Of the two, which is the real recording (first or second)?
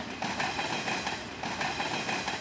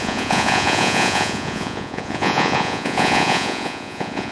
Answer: first